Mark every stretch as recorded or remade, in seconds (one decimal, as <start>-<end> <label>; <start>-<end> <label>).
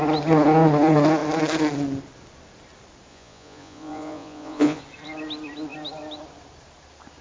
0.0-3.1 recorded; 3.1-4.8 remade; 4.8-7.2 recorded